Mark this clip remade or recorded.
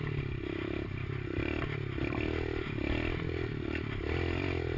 recorded